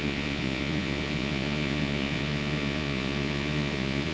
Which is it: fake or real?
fake